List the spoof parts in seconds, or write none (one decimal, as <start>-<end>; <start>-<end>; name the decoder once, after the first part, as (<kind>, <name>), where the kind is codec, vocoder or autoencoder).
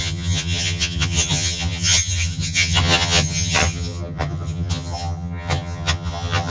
0.0-6.5 (vocoder, HiFi-GAN)